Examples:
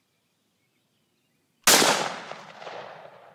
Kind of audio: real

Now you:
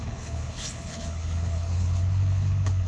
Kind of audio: fake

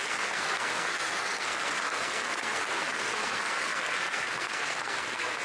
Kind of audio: fake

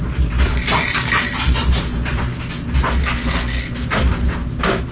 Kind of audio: real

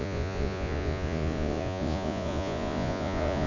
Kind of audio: fake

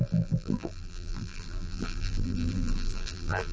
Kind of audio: fake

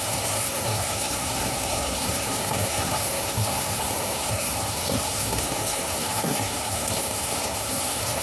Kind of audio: fake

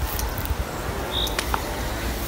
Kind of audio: real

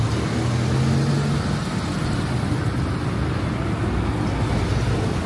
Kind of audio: real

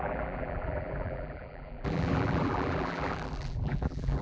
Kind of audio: fake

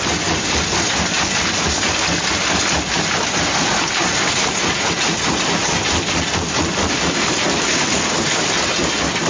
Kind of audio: real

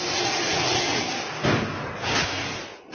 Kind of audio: real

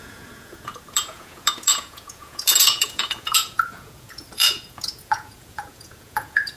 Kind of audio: fake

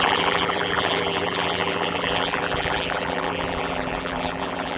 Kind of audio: fake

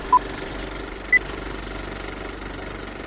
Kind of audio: real